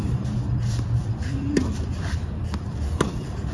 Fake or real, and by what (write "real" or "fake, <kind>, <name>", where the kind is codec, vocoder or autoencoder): fake, vocoder, BigVGAN v2